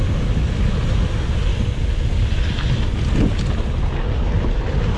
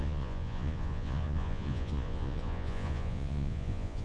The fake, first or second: second